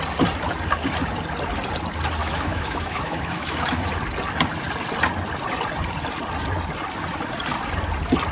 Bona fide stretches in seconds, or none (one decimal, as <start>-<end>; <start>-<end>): 0.0-2.2; 3.9-8.3